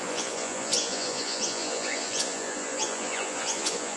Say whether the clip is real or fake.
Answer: fake